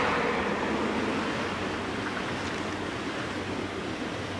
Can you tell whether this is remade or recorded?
recorded